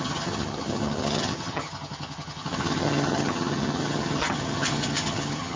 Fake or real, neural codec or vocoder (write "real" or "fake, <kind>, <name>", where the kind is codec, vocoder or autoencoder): fake, vocoder, HiFi-GAN